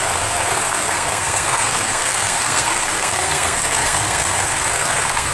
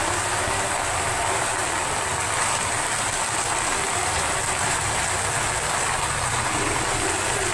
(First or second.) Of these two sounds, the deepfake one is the first